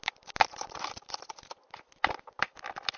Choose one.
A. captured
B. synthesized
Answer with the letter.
A